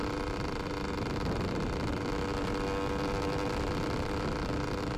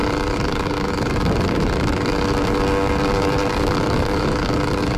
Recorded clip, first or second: first